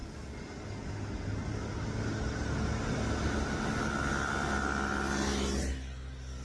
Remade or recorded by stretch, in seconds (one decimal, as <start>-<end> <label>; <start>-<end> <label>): 0.0-6.4 recorded